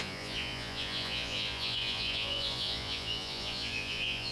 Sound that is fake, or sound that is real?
fake